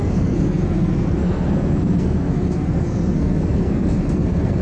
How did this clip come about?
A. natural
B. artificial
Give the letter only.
B